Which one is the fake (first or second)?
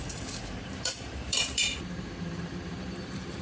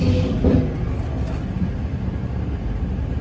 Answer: first